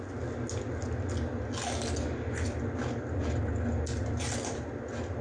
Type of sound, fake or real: real